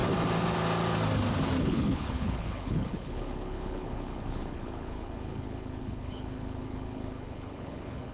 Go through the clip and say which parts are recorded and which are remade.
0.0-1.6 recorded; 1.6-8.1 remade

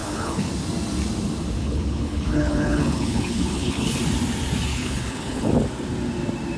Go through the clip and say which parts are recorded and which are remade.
0.0-0.5 remade; 0.5-1.6 recorded; 1.6-4.0 remade; 4.0-4.7 recorded; 4.7-5.5 remade; 5.5-6.6 recorded

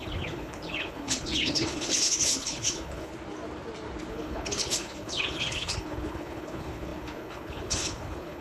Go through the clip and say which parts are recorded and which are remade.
0.0-3.1 remade; 3.1-4.1 recorded; 4.1-8.4 remade

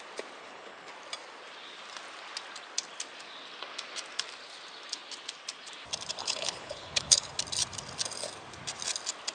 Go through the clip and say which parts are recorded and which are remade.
0.0-0.4 recorded; 0.4-0.9 remade; 0.9-6.2 recorded; 6.2-7.3 remade; 7.3-9.3 recorded